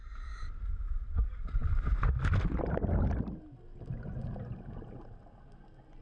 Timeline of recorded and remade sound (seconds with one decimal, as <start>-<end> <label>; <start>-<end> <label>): 0.0-6.0 recorded